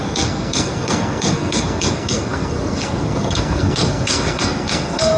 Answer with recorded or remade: remade